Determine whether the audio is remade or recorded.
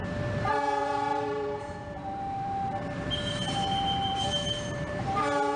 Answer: remade